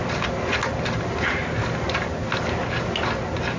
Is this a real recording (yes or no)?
yes